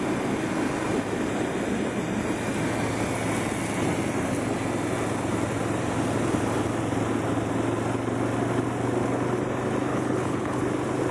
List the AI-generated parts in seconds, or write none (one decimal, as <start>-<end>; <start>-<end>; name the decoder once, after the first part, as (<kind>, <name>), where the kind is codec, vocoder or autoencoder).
9.9-10.6 (codec, HILCodec)